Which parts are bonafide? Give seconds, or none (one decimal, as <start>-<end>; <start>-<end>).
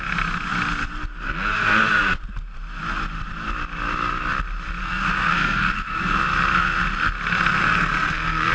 0.0-4.8; 6.2-7.6